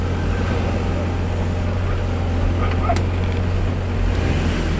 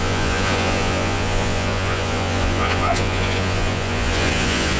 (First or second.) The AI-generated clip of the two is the second